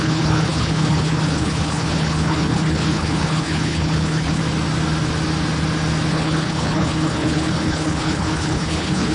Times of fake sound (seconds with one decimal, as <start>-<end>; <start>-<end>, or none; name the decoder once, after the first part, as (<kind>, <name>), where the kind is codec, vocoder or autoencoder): 0.0-4.4 (codec, HILCodec); 6.1-9.1